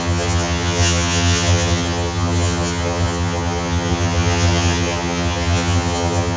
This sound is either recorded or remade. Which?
remade